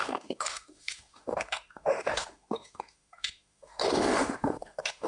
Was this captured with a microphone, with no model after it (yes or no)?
no